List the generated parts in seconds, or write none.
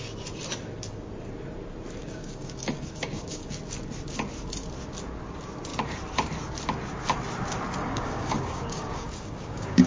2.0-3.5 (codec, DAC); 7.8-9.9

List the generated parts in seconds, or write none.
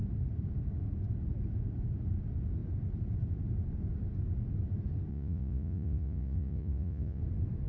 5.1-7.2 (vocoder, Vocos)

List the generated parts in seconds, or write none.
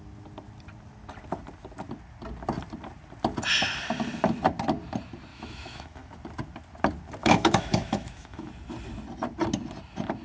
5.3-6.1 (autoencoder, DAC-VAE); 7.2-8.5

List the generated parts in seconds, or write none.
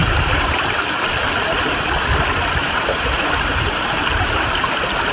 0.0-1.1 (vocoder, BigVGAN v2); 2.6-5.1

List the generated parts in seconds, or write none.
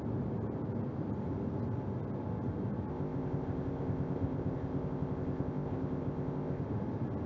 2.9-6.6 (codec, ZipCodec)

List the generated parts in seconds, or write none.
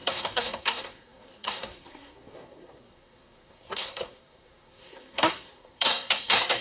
0.0-6.6 (codec, SNAC)